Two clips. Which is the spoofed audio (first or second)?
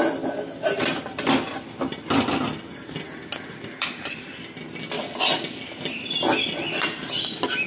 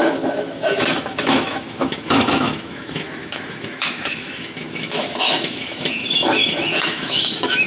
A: second